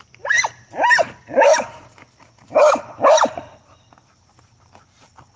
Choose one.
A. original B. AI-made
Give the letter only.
A